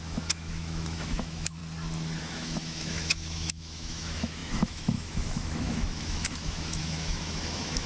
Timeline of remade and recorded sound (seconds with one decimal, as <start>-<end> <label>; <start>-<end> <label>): 0.0-1.6 remade; 1.6-2.2 recorded; 2.2-7.9 remade